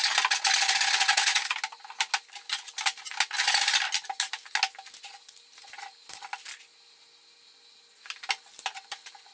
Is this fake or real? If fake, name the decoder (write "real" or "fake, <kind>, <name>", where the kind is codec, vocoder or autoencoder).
real